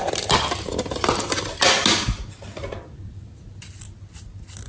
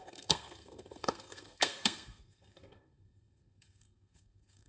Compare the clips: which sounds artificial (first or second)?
second